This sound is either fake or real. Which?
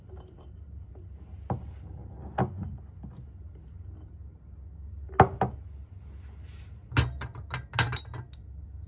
real